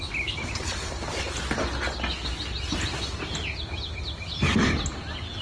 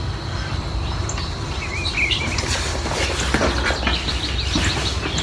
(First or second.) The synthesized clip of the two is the second